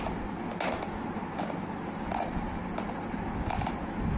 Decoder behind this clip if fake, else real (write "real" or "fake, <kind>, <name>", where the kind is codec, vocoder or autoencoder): real